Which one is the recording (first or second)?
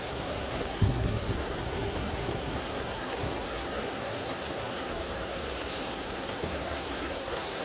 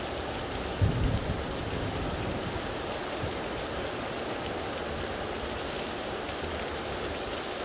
second